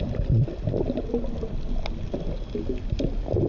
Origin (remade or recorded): recorded